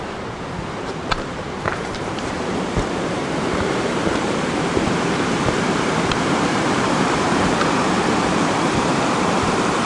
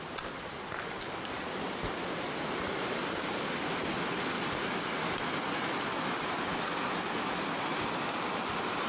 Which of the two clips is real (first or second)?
second